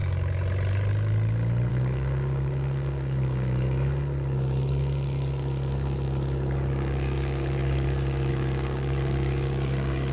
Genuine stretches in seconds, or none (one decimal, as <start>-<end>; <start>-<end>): 0.0-1.7